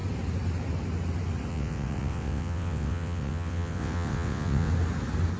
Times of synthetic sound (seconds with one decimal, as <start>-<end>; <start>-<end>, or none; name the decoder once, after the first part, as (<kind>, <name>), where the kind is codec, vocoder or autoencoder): 1.5-4.7 (vocoder, WaveNeXt)